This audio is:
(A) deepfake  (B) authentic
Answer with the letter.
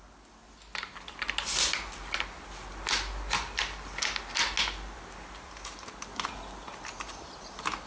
B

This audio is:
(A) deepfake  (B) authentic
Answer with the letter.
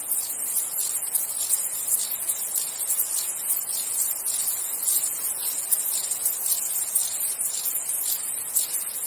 A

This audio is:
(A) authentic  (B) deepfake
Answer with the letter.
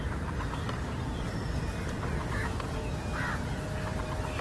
A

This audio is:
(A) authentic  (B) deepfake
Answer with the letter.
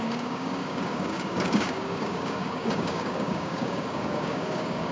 B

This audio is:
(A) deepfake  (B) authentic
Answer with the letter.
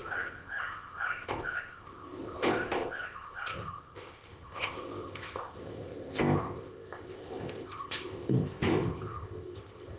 A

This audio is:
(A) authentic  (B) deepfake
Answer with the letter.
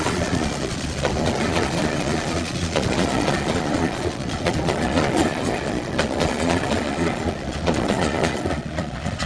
B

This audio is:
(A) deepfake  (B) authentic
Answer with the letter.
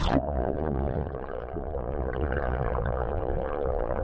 A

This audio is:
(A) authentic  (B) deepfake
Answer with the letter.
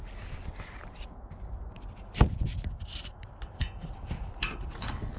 A